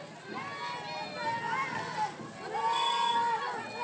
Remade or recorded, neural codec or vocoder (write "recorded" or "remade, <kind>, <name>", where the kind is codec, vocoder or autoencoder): recorded